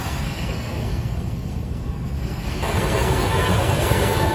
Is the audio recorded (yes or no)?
no